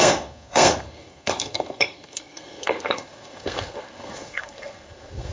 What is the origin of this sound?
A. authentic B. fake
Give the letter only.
B